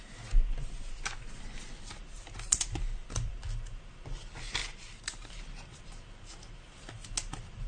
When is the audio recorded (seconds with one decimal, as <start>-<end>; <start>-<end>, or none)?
0.0-2.1; 3.3-4.6; 5.3-7.7